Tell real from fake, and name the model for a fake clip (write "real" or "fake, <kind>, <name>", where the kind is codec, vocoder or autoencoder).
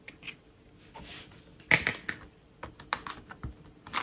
real